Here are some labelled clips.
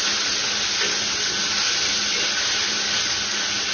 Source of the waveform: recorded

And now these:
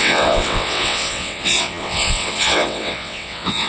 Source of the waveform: remade